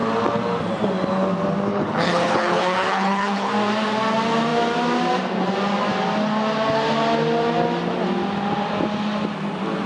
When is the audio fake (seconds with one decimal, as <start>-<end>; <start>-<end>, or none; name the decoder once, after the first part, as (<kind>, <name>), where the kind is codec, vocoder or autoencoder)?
1.7-3.5 (codec, HILCodec)